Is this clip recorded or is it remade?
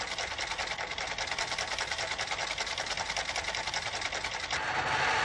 recorded